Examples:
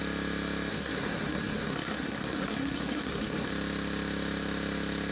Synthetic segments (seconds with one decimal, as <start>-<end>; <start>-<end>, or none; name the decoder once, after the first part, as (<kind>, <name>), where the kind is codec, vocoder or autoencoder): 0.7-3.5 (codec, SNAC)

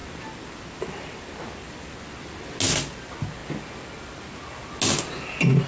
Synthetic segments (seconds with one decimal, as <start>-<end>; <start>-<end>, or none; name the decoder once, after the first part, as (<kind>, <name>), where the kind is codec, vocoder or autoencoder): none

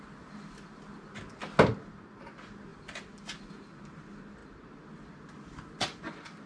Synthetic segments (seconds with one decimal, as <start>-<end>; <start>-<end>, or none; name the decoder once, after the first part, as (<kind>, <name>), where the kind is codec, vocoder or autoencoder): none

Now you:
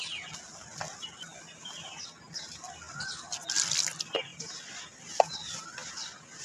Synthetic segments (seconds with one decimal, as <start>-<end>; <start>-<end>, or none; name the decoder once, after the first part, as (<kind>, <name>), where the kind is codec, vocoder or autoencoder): none

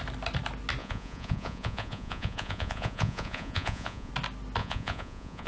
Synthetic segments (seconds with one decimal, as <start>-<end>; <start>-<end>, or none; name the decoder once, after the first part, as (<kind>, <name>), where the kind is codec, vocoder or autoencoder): 0.8-4.1 (vocoder, Vocos); 4.6-5.5

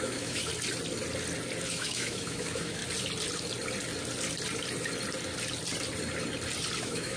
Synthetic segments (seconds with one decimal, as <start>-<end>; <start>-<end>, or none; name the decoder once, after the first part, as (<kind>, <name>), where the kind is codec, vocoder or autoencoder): 0.0-0.5 (autoencoder, DAC-VAE); 1.7-2.8; 6.8-7.2

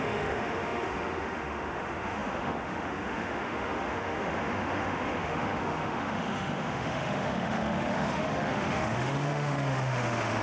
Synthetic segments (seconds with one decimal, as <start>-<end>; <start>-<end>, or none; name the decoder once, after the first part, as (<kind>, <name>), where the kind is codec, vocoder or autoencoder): 0.0-10.4 (autoencoder, DAC-VAE)

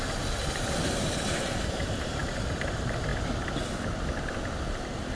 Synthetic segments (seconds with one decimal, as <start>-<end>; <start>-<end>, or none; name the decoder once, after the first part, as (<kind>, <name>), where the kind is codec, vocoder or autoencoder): 0.0-3.1 (vocoder, BigVGAN v2)